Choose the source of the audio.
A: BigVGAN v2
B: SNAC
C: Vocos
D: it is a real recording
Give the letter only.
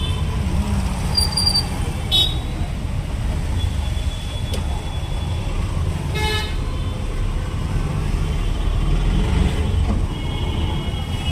D